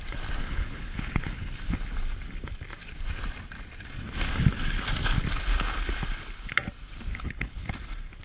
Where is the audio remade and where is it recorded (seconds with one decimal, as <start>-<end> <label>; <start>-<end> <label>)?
0.0-0.4 recorded; 0.4-1.5 remade; 1.5-7.1 recorded; 7.1-7.7 remade; 7.7-8.2 recorded